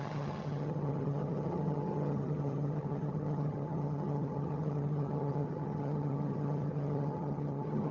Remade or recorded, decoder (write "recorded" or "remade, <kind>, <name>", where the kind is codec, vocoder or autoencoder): remade, vocoder, HiFi-GAN